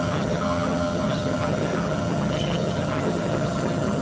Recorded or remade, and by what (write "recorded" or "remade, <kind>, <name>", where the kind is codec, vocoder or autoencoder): remade, vocoder, HiFi-GAN